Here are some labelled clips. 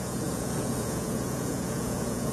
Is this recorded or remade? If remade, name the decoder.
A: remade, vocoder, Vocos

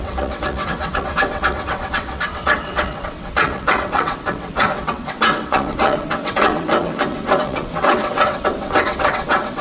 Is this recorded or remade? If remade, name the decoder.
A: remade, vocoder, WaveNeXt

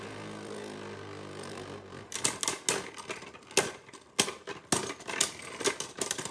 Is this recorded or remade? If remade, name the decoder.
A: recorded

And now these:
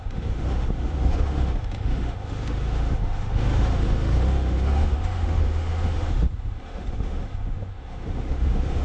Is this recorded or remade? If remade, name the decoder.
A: remade, autoencoder, DAC-VAE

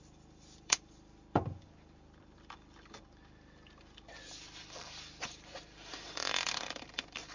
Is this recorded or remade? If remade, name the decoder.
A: remade, vocoder, BigVGAN v2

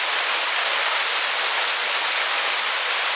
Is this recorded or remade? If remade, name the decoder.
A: recorded